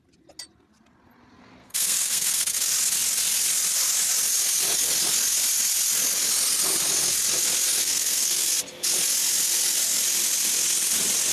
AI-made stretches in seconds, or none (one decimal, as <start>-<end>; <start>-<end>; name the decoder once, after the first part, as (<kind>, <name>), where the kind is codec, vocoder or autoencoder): 1.6-2.7 (codec, SNAC); 7.8-8.5